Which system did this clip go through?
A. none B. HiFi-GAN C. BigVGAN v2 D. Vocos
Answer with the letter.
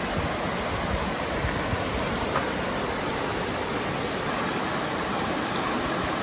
A